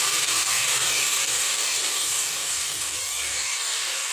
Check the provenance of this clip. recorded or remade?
remade